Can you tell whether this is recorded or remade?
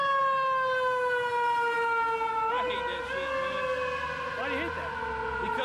recorded